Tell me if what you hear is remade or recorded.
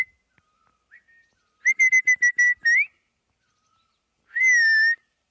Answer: recorded